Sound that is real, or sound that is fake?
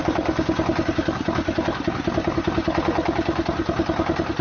real